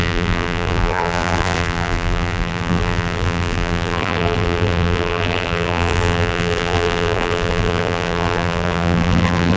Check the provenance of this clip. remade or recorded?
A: remade